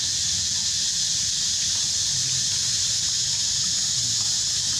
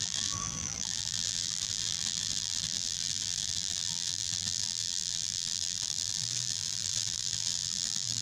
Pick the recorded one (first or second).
first